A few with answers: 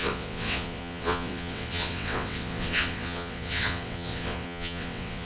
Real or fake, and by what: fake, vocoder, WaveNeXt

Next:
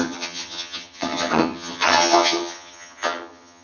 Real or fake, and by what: fake, vocoder, HiFi-GAN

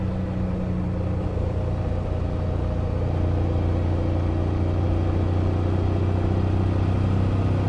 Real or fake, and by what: real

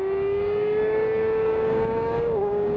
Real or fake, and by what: fake, codec, DAC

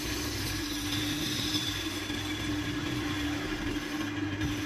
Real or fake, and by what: fake, vocoder, BigVGAN v2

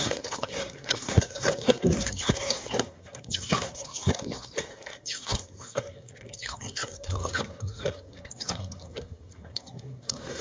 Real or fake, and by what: fake, codec, SNAC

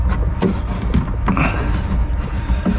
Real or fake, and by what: real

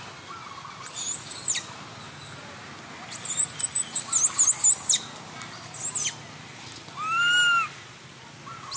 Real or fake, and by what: real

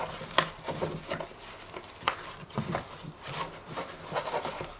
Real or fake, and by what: real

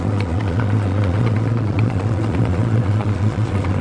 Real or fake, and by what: fake, vocoder, Vocos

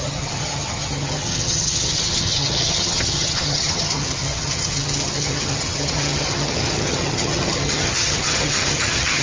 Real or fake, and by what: fake, vocoder, HiFi-GAN